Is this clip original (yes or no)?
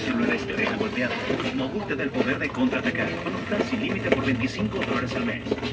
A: yes